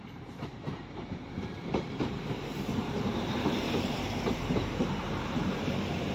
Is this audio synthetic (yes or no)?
yes